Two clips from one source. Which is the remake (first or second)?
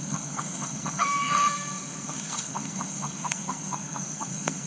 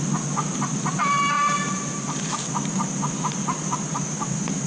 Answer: first